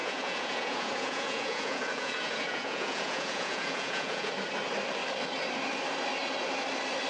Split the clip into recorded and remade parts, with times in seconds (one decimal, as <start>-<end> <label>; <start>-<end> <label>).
0.0-4.3 remade; 4.3-7.1 recorded